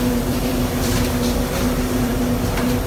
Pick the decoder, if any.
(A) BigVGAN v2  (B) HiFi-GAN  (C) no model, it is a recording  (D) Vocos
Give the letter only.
A